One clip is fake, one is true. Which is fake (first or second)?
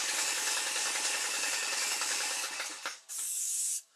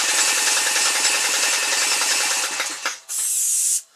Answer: first